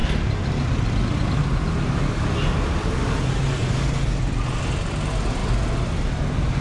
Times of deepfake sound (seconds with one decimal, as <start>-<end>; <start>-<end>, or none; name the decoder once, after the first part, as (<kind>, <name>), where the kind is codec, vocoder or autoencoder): none